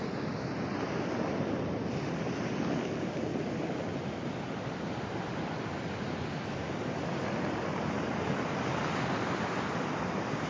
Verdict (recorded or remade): recorded